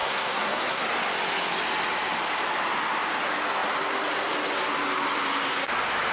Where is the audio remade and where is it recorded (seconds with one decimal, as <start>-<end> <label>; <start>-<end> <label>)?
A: 0.0-0.8 remade; 0.8-6.1 recorded

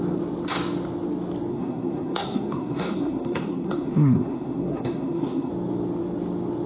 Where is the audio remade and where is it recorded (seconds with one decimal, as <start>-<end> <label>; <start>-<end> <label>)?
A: 0.0-1.5 recorded; 1.5-5.5 remade; 5.5-6.7 recorded

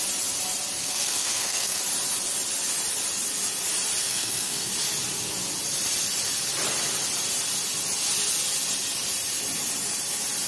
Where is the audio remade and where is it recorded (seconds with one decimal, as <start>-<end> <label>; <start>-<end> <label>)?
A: 0.0-0.8 recorded; 0.8-1.8 remade; 1.8-4.0 recorded; 4.0-4.7 remade; 4.7-10.5 recorded

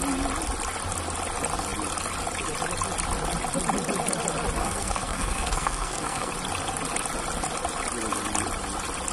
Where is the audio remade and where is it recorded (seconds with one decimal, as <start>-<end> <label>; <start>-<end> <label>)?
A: 0.0-4.6 recorded; 4.6-6.3 remade; 6.3-9.1 recorded